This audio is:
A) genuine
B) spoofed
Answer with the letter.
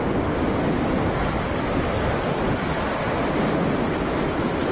A